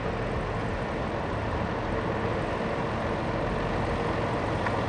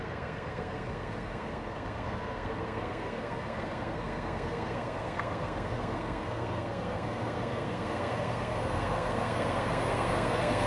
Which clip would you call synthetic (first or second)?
second